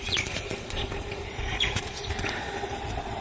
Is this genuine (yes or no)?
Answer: no